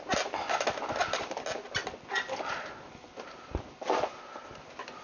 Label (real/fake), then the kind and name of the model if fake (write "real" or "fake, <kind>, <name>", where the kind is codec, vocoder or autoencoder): real